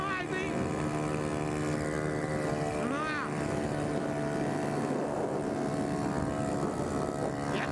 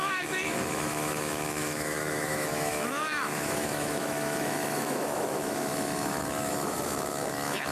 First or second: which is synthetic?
second